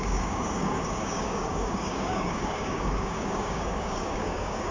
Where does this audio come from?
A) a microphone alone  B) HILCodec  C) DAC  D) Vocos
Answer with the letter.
C